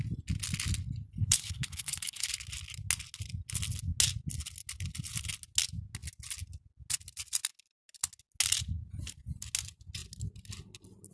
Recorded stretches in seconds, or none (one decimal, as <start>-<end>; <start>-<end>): 0.0-1.2; 2.3-11.1